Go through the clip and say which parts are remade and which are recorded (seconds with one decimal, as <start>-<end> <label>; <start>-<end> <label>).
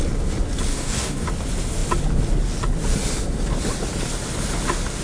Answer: 0.0-0.7 recorded; 0.7-1.3 remade; 1.3-5.0 recorded